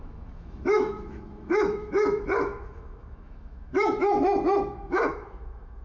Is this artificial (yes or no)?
yes